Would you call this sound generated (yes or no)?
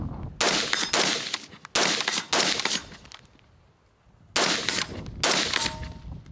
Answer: no